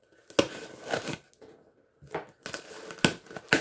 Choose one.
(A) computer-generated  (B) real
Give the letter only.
B